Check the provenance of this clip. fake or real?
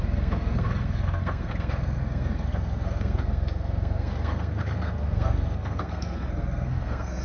fake